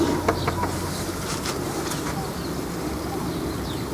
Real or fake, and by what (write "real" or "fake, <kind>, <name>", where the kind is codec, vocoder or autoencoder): real